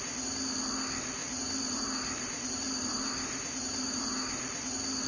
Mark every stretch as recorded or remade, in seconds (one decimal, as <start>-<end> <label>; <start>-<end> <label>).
0.0-1.2 recorded; 1.2-4.3 remade; 4.3-5.1 recorded